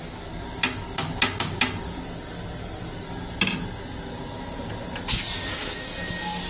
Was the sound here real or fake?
real